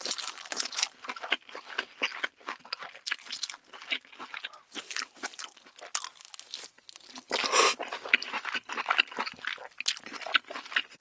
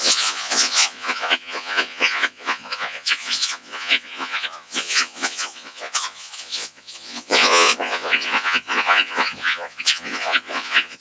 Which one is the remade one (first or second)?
second